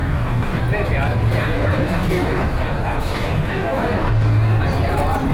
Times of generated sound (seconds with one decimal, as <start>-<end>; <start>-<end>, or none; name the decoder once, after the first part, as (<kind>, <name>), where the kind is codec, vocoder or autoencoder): 0.0-0.6 (codec, DAC); 1.4-4.6